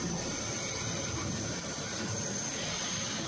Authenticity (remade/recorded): recorded